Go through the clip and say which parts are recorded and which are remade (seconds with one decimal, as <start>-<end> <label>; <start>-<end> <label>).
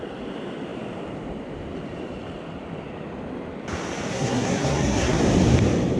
0.0-4.1 recorded; 4.1-5.2 remade; 5.2-6.0 recorded